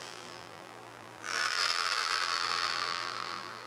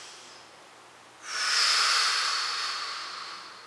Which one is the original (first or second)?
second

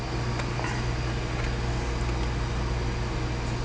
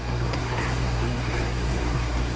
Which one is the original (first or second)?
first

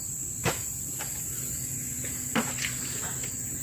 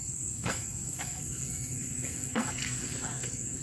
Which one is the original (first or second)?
first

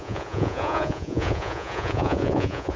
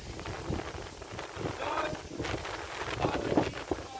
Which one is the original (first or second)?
second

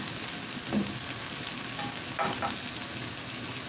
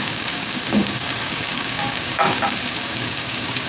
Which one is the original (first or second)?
first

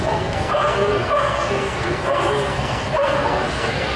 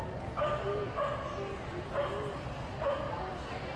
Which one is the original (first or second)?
second